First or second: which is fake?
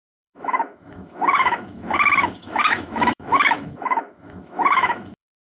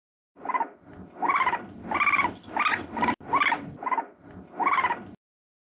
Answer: first